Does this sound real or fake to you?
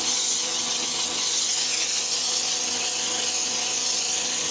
fake